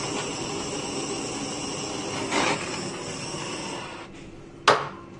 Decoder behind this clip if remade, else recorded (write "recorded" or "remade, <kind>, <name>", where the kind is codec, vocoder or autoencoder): recorded